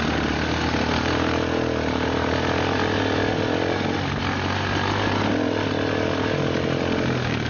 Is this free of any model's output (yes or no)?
yes